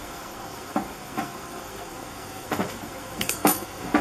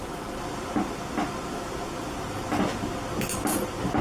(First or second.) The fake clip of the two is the first